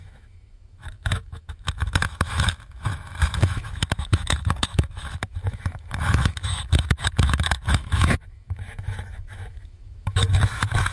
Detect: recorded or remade remade